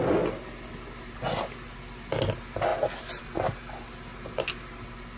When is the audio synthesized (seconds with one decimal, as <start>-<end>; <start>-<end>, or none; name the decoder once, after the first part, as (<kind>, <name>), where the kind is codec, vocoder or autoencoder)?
none